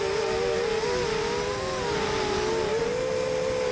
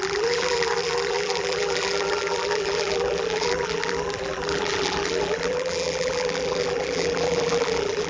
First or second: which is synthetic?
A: second